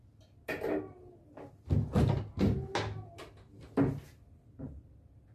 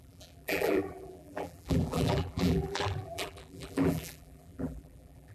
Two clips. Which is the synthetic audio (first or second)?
second